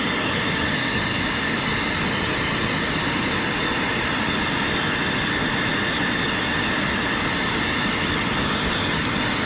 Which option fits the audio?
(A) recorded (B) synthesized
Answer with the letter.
A